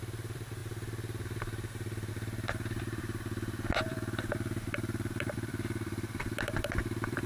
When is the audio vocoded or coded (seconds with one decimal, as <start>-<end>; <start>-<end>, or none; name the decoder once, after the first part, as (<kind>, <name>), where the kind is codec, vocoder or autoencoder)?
0.0-0.6 (vocoder, BigVGAN v2); 2.1-7.3